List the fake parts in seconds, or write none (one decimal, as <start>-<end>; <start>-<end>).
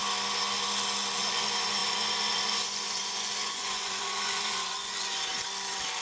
1.2-5.3